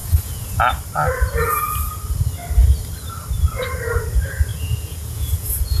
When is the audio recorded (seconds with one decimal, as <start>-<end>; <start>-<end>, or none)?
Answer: 0.6-4.5